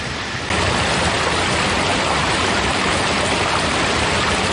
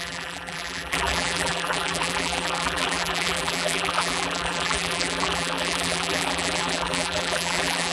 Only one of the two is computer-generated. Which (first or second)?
second